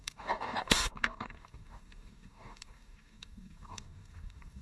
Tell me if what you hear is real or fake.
fake